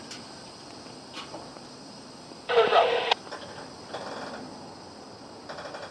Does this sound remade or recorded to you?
recorded